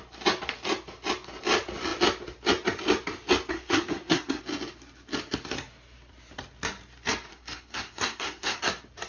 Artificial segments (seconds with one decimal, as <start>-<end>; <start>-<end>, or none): 3.5-4.4; 7.3-8.6